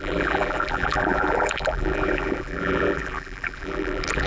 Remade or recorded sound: remade